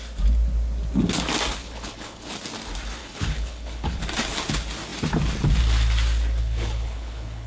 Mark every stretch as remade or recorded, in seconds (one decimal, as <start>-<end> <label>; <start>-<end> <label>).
0.0-1.6 recorded; 1.6-2.3 remade; 2.3-3.0 recorded; 3.0-4.0 remade; 4.0-6.4 recorded; 6.4-7.5 remade